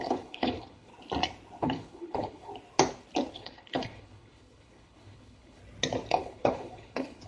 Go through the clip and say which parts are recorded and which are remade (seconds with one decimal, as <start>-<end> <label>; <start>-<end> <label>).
0.0-0.9 remade; 0.9-1.6 recorded; 1.6-2.5 remade; 2.5-3.3 recorded; 3.3-5.6 remade; 5.6-6.1 recorded; 6.1-7.3 remade